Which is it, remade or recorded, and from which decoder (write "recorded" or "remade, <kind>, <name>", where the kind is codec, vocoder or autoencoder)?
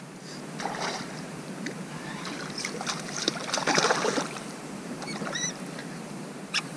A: remade, vocoder, BigVGAN v2